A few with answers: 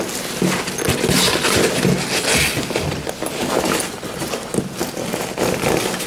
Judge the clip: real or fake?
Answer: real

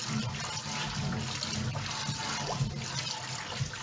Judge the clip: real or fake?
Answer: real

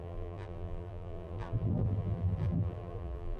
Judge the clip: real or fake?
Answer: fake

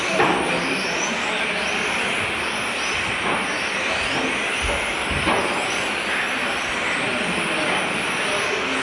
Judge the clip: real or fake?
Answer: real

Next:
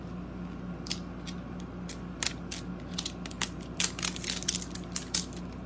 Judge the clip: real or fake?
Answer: real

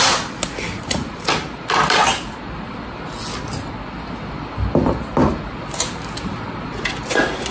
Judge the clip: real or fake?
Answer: real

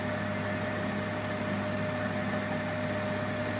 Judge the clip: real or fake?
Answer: real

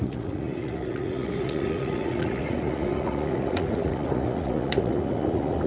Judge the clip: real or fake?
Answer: fake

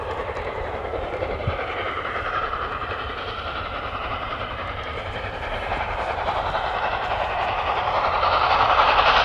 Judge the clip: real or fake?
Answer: fake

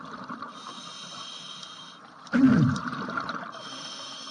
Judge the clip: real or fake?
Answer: real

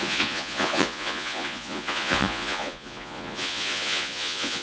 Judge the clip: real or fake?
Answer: fake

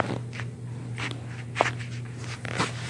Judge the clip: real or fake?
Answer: real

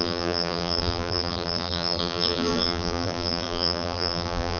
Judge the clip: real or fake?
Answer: fake